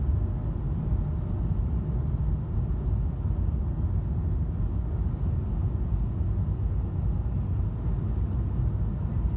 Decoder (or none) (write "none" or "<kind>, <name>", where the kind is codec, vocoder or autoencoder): none